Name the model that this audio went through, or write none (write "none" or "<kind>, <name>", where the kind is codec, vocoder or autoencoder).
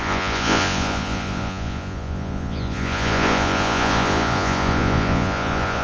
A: vocoder, Vocos